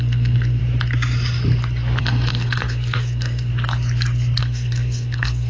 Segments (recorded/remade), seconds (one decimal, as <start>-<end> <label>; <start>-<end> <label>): 0.0-0.6 remade; 0.6-2.0 recorded; 2.0-3.5 remade; 3.5-4.4 recorded; 4.4-5.5 remade